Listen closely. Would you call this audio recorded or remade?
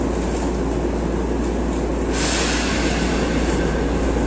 recorded